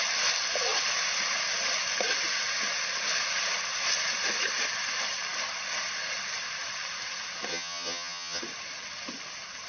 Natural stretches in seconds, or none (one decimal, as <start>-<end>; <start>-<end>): 0.0-7.5; 8.4-9.7

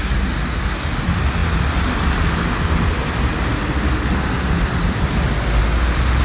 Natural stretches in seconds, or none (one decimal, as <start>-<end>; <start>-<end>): 0.0-6.2

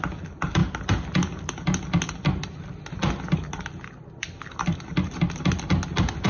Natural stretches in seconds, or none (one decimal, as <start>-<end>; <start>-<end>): 0.0-6.3

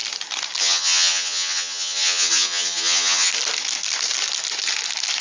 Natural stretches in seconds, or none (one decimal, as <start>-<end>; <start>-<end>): 0.0-0.6; 3.3-5.2

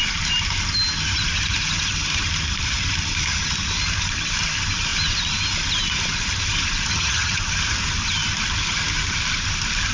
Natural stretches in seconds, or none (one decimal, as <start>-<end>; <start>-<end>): 0.0-6.9; 7.4-9.9

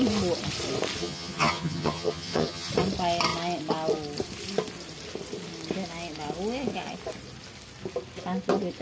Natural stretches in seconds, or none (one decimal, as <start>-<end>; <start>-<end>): 0.0-1.0; 2.7-8.8

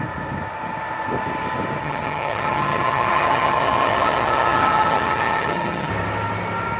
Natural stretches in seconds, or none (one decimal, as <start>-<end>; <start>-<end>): 0.0-1.8; 5.9-6.8